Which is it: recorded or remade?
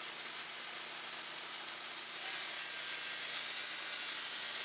recorded